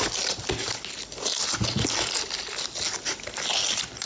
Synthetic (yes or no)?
no